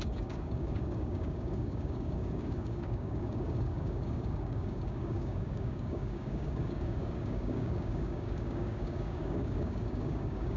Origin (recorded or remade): remade